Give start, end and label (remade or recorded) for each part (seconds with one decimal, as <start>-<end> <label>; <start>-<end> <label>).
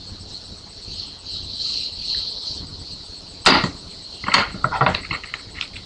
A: 0.0-5.9 recorded